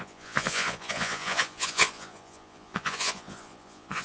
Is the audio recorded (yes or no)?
no